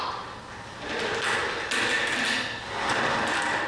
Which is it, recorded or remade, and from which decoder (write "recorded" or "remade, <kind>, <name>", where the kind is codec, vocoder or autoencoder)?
recorded